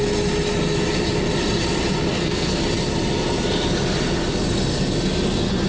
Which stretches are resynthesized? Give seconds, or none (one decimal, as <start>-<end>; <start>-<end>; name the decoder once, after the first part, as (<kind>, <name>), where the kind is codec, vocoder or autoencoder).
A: 2.1-2.6 (codec, SNAC)